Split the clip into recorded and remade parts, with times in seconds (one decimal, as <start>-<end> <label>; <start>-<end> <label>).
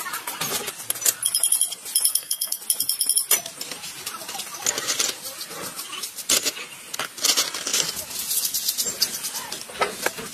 0.0-2.1 recorded; 2.1-2.6 remade; 2.6-10.3 recorded